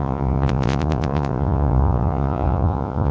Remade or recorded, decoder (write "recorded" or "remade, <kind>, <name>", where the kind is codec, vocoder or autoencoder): remade, vocoder, Vocos